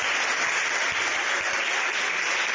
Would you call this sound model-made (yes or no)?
no